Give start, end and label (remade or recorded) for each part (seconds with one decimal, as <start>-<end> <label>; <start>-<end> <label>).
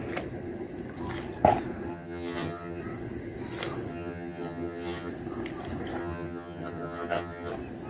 0.0-1.9 recorded; 1.9-2.8 remade; 2.8-3.9 recorded; 3.9-5.1 remade; 5.1-6.0 recorded; 6.0-7.5 remade; 7.5-7.9 recorded